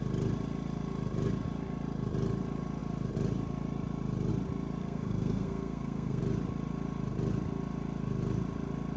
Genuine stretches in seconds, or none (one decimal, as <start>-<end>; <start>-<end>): 0.0-4.8; 6.2-9.0